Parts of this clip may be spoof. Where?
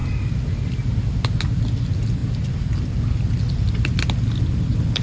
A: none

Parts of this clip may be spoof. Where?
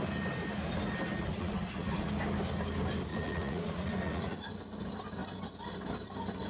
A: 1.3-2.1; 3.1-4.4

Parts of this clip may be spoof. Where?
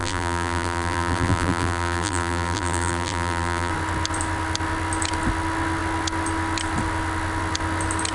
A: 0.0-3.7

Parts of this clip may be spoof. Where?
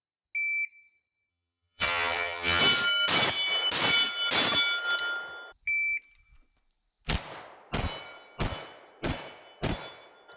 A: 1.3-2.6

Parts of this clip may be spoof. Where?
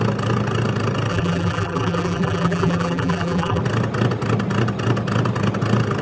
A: 1.1-3.6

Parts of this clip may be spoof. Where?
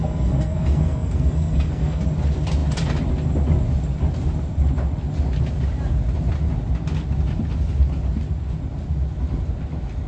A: 0.0-2.0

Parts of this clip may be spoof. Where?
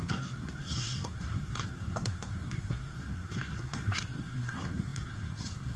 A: 0.0-5.8